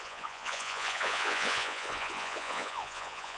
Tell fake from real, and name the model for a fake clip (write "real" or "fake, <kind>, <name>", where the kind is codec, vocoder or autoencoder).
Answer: fake, vocoder, Vocos